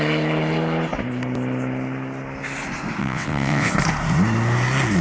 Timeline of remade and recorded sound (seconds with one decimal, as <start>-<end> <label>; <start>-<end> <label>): 0.0-3.0 recorded; 3.0-3.7 remade; 3.7-5.0 recorded